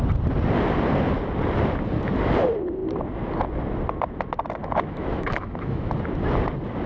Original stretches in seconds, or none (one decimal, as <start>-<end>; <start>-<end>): 0.0-4.6; 5.9-6.9